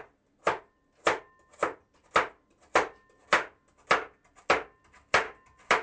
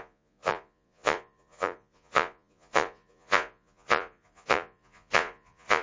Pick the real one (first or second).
first